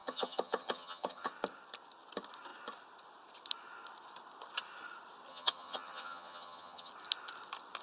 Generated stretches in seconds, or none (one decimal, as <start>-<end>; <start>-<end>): 0.0-1.3; 5.3-6.9

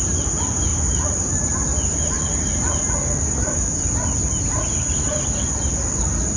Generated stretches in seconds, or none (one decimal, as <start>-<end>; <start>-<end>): none

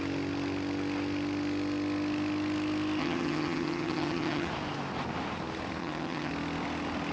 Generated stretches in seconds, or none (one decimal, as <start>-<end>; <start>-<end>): 3.0-4.5; 5.8-6.3

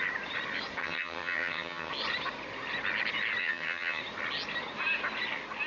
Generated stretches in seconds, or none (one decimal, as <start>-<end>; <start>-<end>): 0.8-1.9; 3.4-4.0

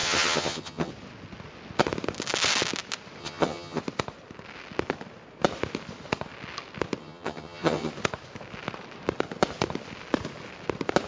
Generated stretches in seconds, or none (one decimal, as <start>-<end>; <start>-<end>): 0.0-0.9; 3.2-3.8; 7.0-7.9

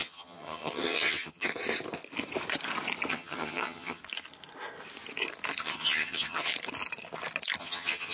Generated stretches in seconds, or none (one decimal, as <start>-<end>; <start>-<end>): 0.0-1.5; 3.1-4.0; 5.6-6.5; 7.6-8.1